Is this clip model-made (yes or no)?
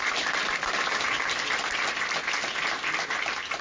no